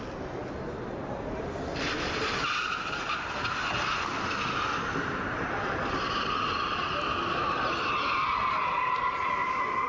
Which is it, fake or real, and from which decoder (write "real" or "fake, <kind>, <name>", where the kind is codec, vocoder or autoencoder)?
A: real